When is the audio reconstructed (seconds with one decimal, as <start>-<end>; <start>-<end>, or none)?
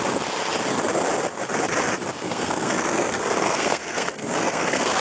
2.2-5.0